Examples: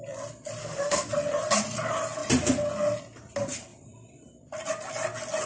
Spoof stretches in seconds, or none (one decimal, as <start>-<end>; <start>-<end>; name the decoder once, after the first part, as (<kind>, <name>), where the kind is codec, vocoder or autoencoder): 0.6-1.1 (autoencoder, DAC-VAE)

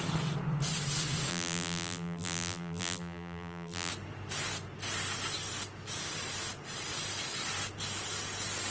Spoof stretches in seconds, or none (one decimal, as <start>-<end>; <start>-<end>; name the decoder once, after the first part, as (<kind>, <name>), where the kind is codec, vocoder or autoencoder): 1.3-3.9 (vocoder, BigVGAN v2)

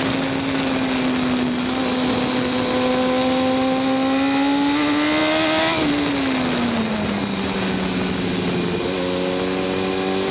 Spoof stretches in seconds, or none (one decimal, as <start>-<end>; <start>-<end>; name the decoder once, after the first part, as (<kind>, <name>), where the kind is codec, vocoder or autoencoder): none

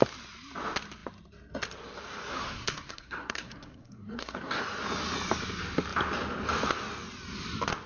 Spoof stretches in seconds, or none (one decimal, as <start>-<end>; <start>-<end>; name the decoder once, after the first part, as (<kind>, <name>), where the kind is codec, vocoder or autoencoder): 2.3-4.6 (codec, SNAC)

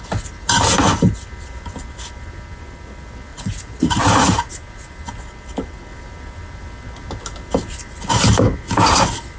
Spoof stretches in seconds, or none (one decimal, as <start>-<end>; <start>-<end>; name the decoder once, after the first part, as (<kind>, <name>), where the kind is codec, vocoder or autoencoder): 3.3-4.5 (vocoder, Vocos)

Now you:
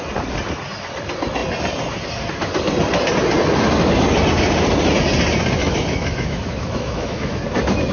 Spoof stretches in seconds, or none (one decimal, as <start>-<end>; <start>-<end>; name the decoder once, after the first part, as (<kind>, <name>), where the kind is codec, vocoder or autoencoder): 5.6-7.4 (autoencoder, DAC-VAE)

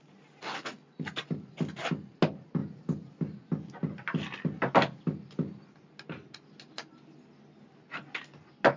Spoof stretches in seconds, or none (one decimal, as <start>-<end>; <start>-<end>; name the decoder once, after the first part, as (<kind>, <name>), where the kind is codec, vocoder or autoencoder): none